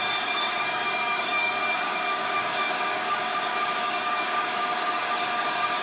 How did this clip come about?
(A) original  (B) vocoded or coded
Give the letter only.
B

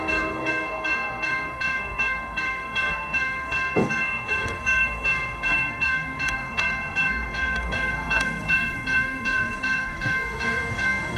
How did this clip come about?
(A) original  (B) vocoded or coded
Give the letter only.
B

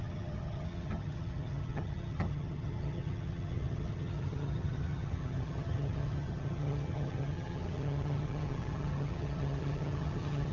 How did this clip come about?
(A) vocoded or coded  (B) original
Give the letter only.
A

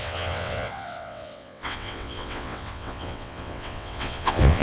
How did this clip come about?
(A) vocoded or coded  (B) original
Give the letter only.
A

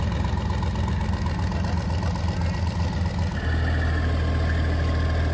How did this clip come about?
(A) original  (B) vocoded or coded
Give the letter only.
A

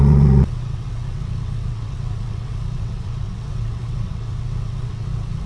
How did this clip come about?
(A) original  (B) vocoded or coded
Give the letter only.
B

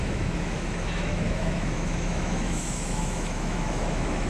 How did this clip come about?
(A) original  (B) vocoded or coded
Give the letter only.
B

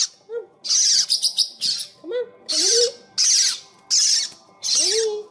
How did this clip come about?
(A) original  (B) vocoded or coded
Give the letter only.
A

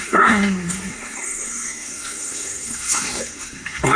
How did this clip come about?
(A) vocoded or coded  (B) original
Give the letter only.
A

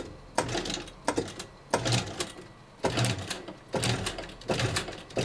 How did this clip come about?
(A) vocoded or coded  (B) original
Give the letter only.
B